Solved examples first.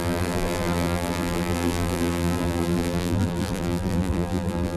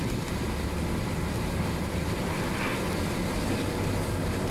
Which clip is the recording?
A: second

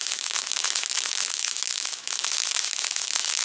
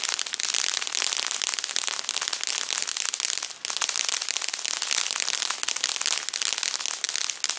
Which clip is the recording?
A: second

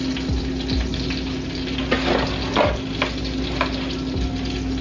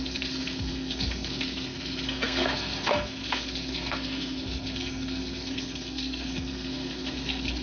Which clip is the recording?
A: first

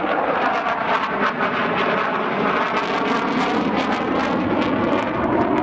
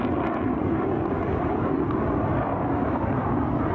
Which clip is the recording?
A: first